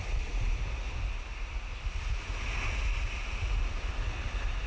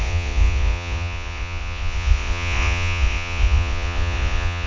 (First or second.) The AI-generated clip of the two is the second